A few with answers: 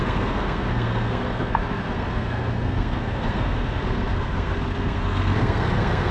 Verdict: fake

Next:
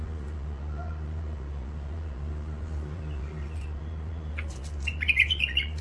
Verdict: fake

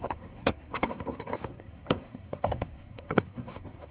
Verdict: fake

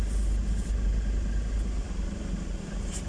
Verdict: real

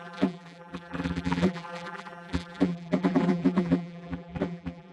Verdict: fake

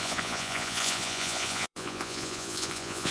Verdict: fake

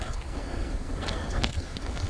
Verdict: fake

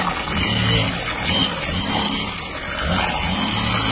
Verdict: real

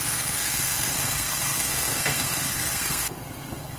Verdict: fake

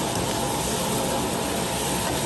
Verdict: real